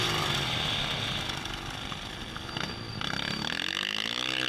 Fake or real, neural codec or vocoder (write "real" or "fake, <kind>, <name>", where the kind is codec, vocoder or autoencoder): real